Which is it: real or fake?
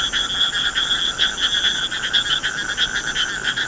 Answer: real